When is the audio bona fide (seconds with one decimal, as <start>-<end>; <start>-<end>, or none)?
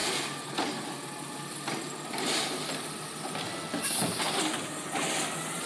0.0-5.7